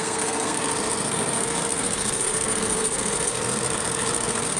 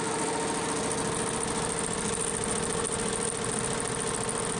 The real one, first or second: second